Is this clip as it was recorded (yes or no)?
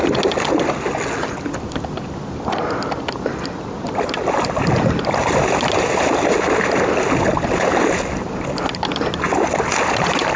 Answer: yes